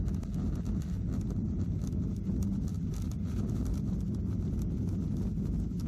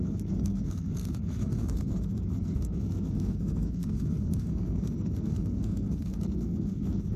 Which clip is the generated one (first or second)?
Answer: second